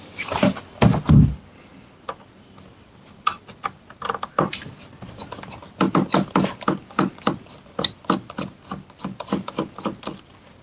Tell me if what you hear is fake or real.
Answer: real